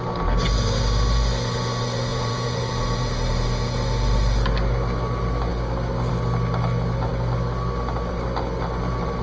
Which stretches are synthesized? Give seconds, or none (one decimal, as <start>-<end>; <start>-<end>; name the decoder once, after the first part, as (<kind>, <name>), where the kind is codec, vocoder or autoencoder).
2.1-2.7 (vocoder, Vocos)